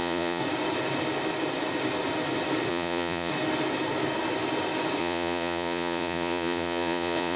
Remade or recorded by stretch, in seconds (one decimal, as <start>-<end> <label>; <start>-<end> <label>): 0.0-0.4 remade; 0.4-2.7 recorded; 2.7-3.3 remade; 3.3-5.0 recorded; 5.0-7.4 remade